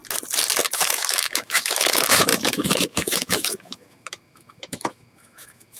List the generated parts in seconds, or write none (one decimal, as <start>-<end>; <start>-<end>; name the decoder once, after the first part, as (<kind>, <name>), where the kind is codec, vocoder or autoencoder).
0.6-5.8 (autoencoder, DAC-VAE)